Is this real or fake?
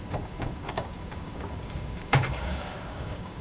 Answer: fake